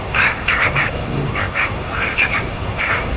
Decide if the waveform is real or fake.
fake